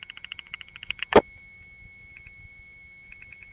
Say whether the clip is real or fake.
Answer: fake